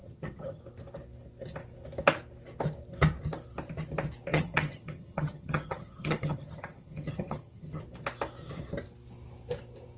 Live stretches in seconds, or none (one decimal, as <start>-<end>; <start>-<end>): 0.6-4.3; 7.8-10.0